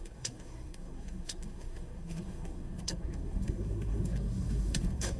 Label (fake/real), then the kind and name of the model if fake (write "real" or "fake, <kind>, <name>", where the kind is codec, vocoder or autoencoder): fake, codec, SNAC